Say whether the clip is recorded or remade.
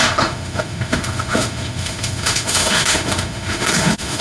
remade